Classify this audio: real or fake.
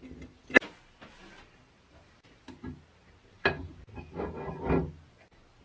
real